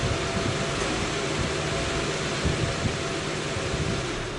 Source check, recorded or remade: recorded